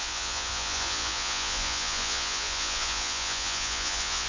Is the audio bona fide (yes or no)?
no